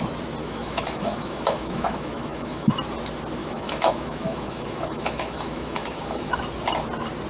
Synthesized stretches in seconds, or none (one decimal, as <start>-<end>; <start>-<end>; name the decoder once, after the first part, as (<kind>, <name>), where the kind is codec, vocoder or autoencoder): 0.4-2.7 (autoencoder, DAC-VAE); 3.4-6.4